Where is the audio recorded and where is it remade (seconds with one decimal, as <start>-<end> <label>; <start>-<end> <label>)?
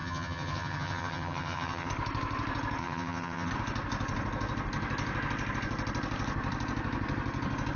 0.0-1.9 remade; 1.9-2.8 recorded; 2.8-3.5 remade; 3.5-7.8 recorded